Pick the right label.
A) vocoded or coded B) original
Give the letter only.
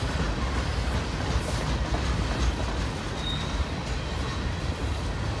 B